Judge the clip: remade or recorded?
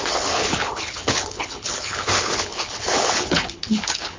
remade